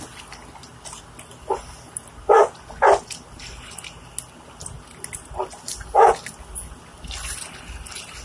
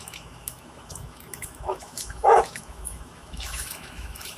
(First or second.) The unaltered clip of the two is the first